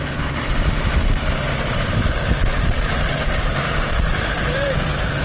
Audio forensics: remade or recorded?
remade